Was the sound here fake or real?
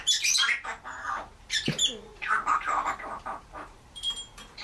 fake